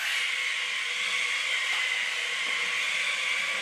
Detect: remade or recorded recorded